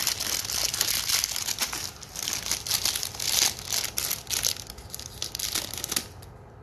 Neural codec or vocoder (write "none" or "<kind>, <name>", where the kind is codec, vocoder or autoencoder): none